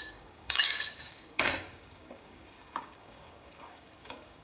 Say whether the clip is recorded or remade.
remade